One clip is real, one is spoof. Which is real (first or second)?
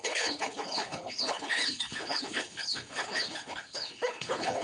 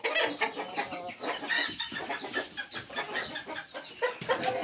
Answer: second